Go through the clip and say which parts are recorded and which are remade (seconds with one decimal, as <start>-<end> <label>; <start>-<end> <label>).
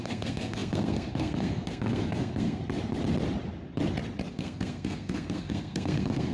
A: 0.0-2.6 remade; 2.6-4.3 recorded; 4.3-6.3 remade